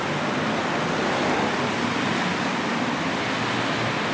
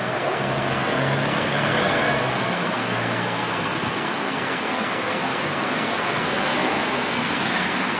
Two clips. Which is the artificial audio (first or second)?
second